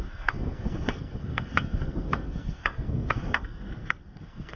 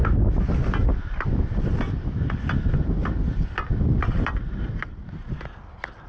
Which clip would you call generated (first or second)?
first